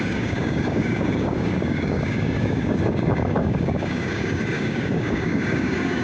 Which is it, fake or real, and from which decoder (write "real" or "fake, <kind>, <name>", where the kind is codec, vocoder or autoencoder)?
fake, codec, DAC